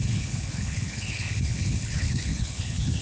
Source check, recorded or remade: remade